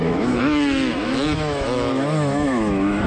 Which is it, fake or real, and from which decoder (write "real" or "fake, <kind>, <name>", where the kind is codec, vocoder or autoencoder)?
fake, autoencoder, DAC-VAE